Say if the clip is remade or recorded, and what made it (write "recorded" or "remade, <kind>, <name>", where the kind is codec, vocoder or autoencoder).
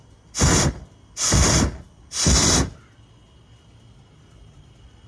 recorded